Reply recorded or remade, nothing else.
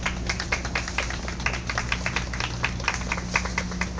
recorded